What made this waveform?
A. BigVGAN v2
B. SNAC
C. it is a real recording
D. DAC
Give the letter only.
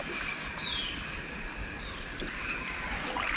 C